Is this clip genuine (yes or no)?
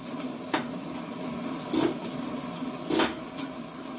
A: yes